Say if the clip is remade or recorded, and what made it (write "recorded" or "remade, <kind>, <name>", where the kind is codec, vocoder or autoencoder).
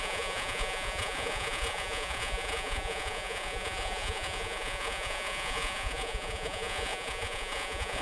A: remade, vocoder, Vocos